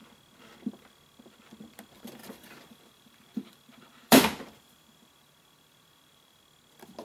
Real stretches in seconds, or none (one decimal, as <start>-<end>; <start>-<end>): 0.0-2.2; 6.4-7.0